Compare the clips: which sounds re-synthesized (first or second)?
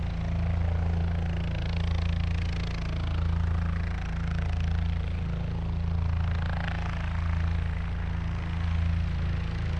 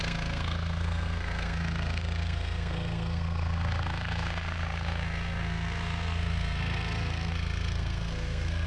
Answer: second